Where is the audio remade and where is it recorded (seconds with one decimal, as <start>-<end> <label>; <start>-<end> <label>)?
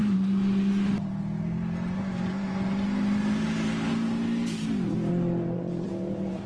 0.0-5.1 recorded; 5.1-5.9 remade; 5.9-6.5 recorded